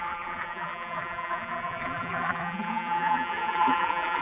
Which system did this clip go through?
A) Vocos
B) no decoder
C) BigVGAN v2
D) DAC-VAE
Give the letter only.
C